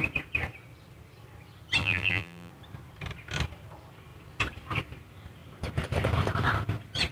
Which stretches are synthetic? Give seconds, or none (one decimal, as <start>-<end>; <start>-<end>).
1.8-2.5